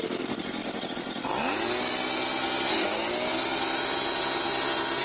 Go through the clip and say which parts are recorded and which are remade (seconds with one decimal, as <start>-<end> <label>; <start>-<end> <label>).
0.0-5.0 recorded